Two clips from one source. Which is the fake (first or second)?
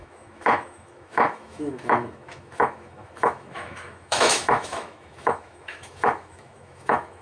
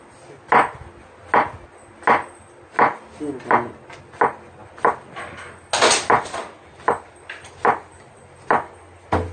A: first